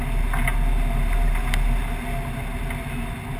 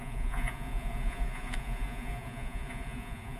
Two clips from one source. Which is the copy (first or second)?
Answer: second